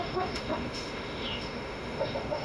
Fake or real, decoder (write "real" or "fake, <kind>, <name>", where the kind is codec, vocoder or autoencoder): fake, autoencoder, DAC-VAE